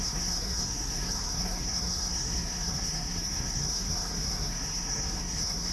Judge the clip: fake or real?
fake